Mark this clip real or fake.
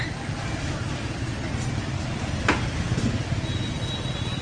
real